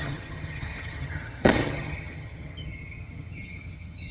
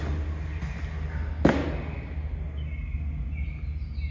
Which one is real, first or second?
second